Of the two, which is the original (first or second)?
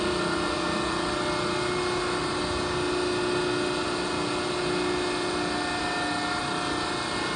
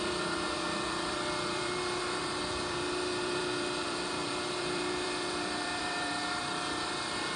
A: first